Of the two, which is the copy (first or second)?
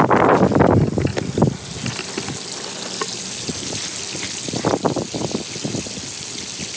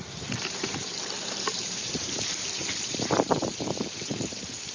second